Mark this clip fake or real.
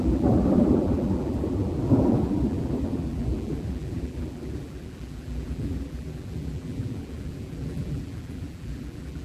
fake